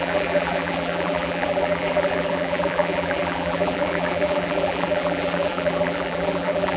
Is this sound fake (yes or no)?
yes